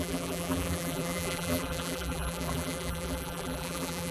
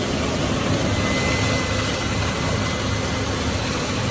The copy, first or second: first